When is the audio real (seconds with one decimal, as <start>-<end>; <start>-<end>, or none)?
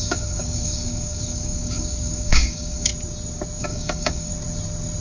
2.9-3.6; 4.3-5.0